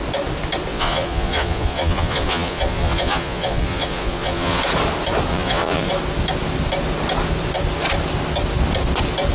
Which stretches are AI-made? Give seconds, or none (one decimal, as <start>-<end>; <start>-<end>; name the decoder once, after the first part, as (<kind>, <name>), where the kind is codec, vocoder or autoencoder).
0.7-4.6 (vocoder, Vocos); 5.3-5.9